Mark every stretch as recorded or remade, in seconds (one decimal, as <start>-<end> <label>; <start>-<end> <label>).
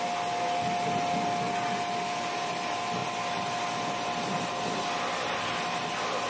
0.0-6.3 recorded